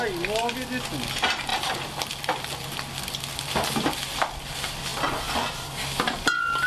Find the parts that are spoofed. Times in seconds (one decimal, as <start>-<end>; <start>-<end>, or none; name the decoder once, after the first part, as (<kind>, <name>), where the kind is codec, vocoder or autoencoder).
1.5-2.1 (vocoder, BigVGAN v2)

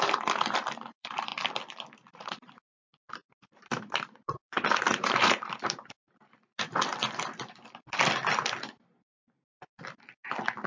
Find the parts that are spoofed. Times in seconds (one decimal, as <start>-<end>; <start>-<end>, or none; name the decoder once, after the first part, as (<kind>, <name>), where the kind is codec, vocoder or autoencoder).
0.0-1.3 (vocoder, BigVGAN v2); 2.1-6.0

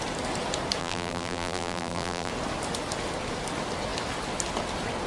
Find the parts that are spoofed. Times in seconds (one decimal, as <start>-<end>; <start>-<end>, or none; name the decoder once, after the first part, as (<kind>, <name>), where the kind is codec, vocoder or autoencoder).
0.8-2.3 (vocoder, BigVGAN v2)

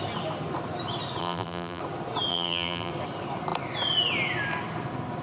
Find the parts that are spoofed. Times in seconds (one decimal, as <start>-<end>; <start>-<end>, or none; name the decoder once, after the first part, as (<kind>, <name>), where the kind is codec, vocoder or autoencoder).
1.2-1.8 (vocoder, BigVGAN v2); 2.3-2.9

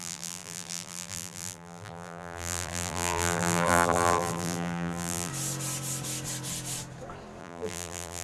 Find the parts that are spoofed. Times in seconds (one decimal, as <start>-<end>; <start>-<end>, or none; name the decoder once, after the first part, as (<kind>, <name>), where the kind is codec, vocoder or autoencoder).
0.0-5.3 (vocoder, BigVGAN v2); 7.4-8.2

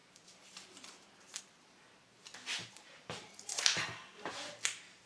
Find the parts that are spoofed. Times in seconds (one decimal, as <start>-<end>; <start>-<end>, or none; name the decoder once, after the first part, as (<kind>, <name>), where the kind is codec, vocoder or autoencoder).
0.0-1.4 (vocoder, BigVGAN v2); 2.6-4.3